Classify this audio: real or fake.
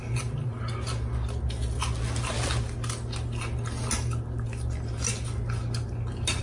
real